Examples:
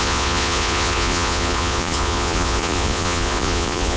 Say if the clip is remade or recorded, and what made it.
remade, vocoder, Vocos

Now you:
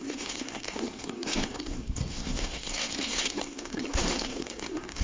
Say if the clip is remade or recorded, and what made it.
remade, codec, SNAC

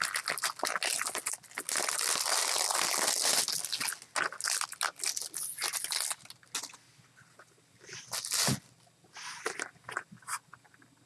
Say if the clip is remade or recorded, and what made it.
recorded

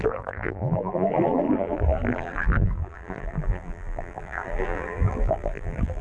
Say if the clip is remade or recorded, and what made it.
remade, vocoder, BigVGAN v2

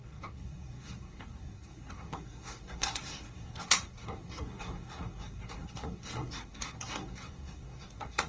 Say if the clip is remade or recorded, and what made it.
remade, codec, SNAC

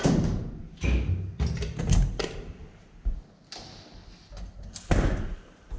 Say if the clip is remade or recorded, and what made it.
recorded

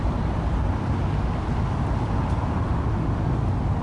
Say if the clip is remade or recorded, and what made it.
recorded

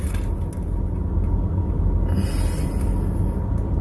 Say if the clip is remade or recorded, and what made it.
recorded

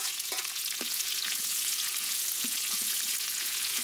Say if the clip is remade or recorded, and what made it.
remade, vocoder, Vocos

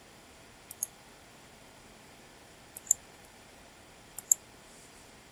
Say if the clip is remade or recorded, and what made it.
remade, vocoder, BigVGAN v2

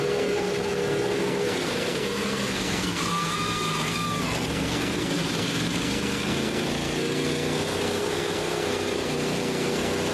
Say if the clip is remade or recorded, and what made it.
remade, codec, SNAC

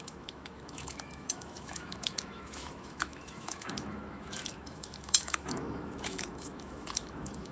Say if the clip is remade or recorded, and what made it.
remade, autoencoder, DAC-VAE